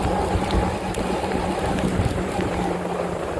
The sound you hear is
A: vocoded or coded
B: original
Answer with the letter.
B